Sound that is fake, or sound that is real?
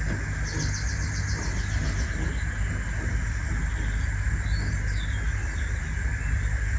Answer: real